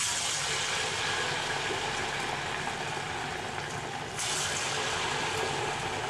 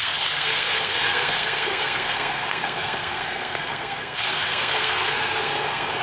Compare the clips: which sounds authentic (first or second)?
first